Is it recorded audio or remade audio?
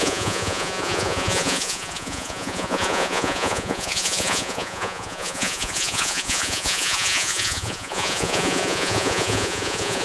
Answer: remade